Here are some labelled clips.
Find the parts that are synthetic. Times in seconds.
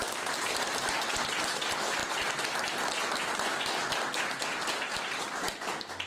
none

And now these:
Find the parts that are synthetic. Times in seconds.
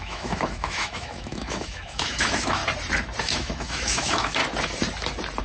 0.0-2.6 (autoencoder, DAC-VAE); 3.2-4.4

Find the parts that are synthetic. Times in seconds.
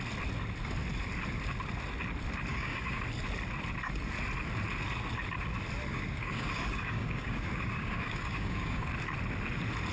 2.5-3.0 (codec, DAC); 5.9-8.9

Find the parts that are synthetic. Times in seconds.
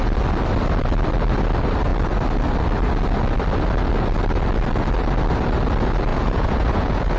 6.1-7.2 (vocoder, Vocos)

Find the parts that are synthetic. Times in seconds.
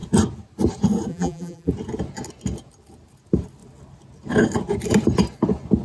1.1-1.7 (vocoder, BigVGAN v2)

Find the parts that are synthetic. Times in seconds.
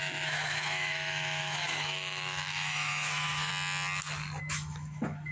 0.0-3.5 (autoencoder, DAC-VAE); 4.4-5.3